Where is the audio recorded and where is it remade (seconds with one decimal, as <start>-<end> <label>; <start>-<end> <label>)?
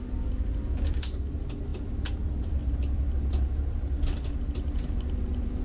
0.0-5.6 recorded